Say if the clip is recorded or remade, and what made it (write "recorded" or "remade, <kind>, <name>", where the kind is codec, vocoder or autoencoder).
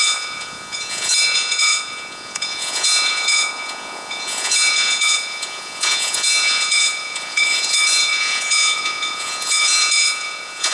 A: remade, vocoder, Vocos